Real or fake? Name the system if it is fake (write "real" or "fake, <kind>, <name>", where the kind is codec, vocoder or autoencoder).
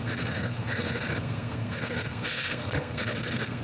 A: fake, codec, SNAC